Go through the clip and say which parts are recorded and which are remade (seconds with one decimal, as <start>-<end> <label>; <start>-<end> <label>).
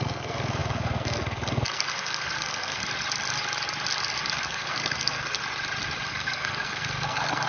0.0-2.8 remade; 2.8-4.3 recorded; 4.3-5.4 remade; 5.4-6.1 recorded; 6.1-7.5 remade